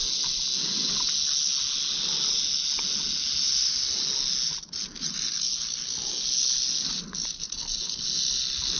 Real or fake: real